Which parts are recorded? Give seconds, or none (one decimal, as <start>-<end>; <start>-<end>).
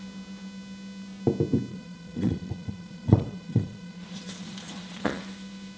0.0-1.7; 5.2-5.8